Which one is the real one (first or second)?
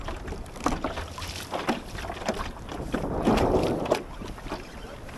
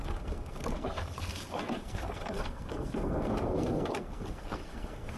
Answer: first